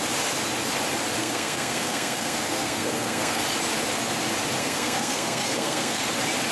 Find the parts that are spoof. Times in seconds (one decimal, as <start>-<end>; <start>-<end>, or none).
1.2-3.4; 4.6-6.0